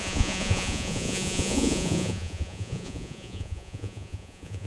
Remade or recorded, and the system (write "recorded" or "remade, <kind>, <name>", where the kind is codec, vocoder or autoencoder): remade, vocoder, Vocos